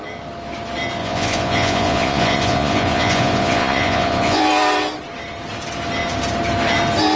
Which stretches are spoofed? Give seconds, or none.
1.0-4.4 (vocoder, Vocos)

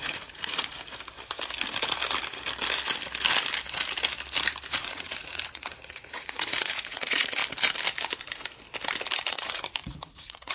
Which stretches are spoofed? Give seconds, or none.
0.0-0.7 (vocoder, Vocos); 4.7-7.4; 9.3-10.5